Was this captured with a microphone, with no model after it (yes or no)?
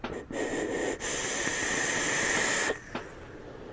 yes